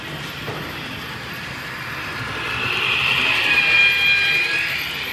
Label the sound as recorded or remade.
recorded